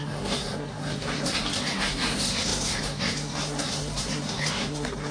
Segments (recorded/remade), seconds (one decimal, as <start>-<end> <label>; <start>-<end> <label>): 0.0-5.1 remade